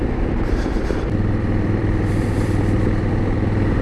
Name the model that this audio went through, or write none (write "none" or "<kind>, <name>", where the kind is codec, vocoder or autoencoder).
vocoder, BigVGAN v2